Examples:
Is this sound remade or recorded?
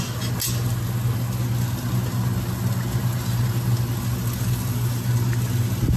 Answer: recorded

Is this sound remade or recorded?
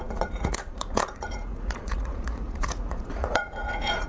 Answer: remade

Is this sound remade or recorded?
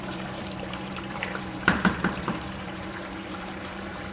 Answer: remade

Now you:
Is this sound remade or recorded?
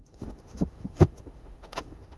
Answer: remade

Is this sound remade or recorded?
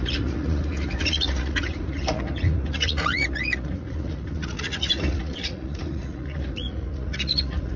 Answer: remade